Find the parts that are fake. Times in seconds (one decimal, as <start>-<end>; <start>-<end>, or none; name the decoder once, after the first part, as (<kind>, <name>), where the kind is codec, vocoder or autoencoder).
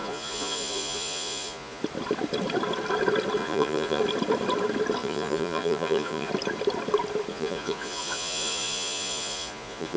0.0-1.8 (vocoder, Vocos); 3.4-4.0; 5.0-6.3; 7.3-10.0